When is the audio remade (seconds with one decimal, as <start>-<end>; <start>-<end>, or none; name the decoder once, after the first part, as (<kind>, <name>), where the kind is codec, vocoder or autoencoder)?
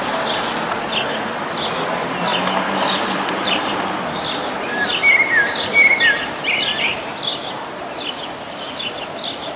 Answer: 2.3-6.0 (vocoder, BigVGAN v2)